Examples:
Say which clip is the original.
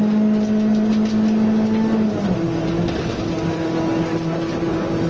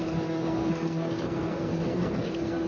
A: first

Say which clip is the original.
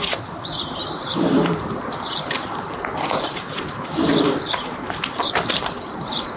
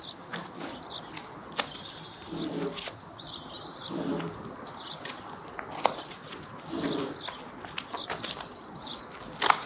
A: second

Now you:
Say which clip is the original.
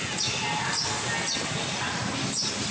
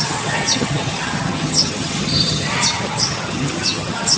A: first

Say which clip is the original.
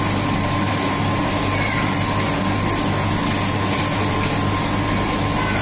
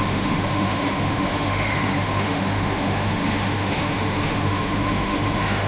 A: first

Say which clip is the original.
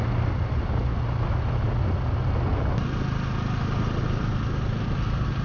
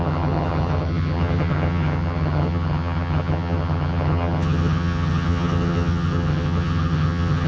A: first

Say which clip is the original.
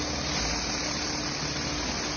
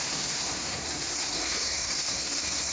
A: first